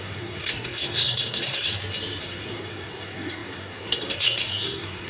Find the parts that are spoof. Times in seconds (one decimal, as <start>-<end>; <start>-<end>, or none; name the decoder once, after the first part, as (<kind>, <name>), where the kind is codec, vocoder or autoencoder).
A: 0.0-1.7 (codec, SNAC); 2.2-5.1